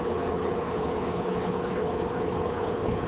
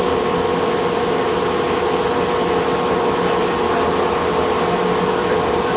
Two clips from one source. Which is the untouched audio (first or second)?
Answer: second